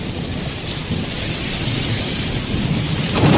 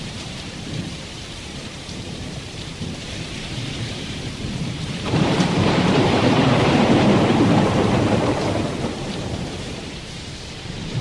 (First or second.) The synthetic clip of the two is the second